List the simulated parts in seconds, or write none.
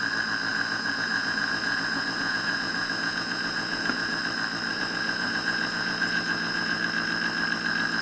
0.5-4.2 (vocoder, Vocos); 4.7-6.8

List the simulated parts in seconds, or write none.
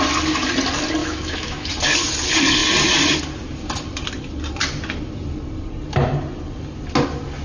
1.0-1.7 (autoencoder, DAC-VAE)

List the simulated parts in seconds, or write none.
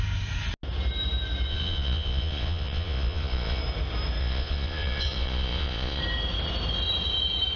1.5-3.6 (vocoder, Vocos); 4.2-6.0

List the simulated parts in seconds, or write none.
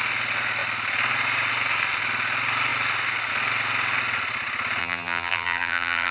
4.8-6.1 (vocoder, BigVGAN v2)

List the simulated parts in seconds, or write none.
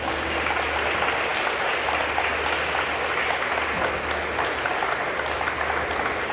none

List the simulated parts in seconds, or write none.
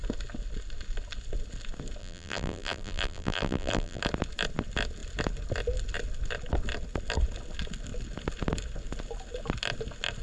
2.0-4.0 (vocoder, BigVGAN v2)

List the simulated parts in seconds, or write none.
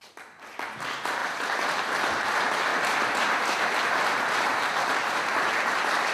none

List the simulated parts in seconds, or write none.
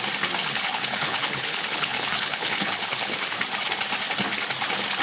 0.4-3.4 (codec, HILCodec)